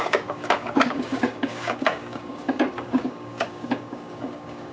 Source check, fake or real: fake